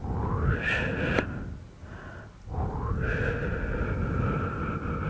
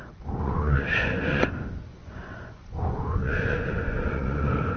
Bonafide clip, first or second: first